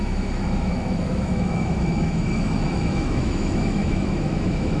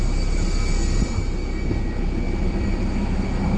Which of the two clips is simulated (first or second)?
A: first